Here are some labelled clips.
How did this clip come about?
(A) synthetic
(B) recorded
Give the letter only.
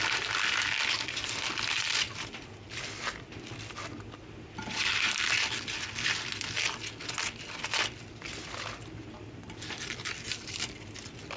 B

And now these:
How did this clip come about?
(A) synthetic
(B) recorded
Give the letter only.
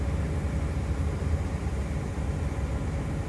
B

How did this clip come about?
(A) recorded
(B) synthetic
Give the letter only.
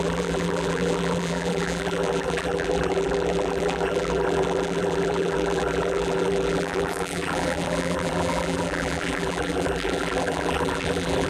B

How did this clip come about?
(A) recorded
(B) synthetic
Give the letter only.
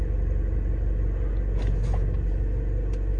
A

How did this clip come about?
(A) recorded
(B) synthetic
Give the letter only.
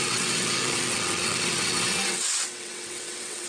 B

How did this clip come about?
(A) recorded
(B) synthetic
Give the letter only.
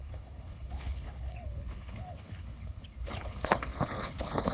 B